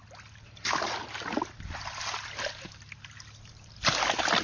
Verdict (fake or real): real